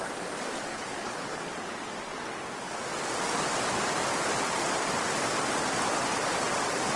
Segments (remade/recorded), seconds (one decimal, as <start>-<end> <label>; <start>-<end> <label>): 0.0-0.7 recorded; 0.7-1.4 remade; 1.4-7.0 recorded